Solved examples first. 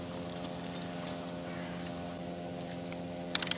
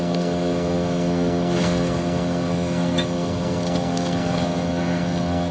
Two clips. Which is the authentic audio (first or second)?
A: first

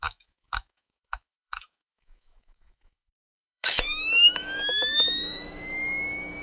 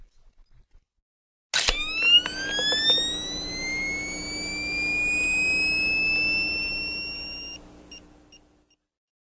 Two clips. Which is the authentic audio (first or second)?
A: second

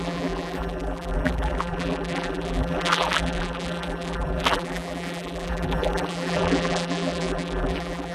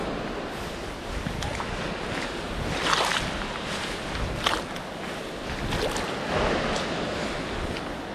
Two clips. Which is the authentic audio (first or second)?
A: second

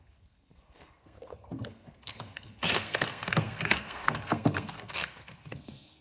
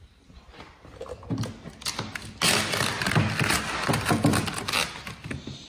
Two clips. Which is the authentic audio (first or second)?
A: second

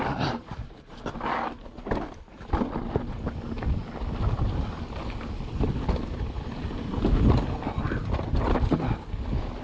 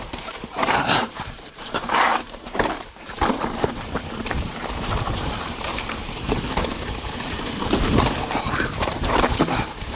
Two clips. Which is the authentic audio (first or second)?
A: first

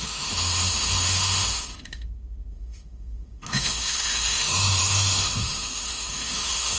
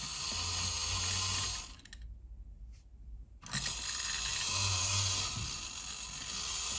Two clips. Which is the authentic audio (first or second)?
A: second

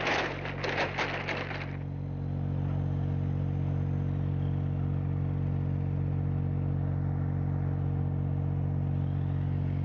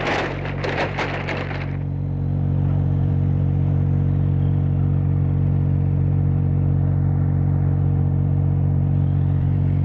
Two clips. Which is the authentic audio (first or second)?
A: first